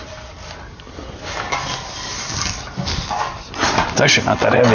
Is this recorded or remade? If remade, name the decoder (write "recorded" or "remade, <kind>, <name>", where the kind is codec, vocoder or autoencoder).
recorded